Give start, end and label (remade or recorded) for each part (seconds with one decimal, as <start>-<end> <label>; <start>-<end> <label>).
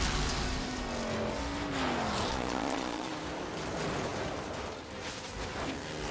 0.0-2.3 recorded; 2.3-3.1 remade; 3.1-6.1 recorded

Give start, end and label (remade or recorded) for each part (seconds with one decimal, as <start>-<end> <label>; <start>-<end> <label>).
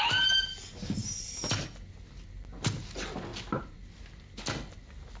0.0-5.2 recorded